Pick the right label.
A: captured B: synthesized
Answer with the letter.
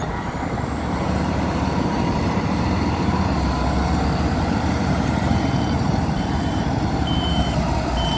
B